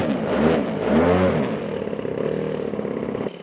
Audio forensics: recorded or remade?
recorded